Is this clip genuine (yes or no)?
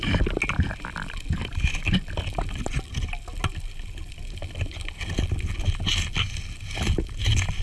yes